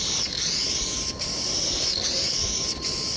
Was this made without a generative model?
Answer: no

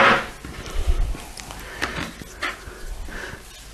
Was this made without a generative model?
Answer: yes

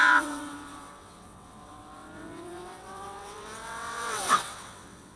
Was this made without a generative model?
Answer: no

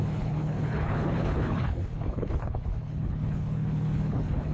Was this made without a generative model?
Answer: no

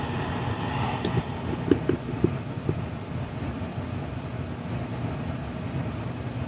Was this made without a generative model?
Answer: no